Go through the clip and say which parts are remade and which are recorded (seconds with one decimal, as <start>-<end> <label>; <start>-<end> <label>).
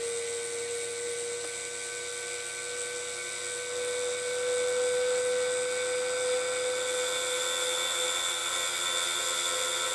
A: 0.0-9.9 recorded